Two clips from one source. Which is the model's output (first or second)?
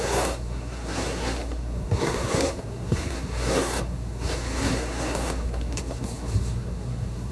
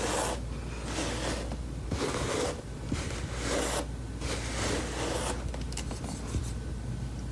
first